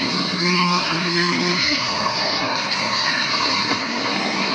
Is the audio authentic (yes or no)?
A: no